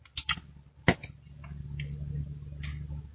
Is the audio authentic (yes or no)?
yes